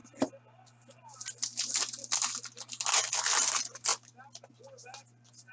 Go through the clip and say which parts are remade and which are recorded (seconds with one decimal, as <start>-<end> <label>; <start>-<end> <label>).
0.0-5.5 recorded